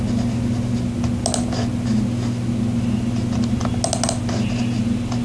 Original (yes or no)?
yes